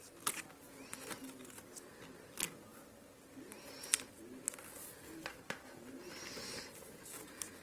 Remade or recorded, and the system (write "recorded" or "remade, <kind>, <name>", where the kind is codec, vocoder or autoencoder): recorded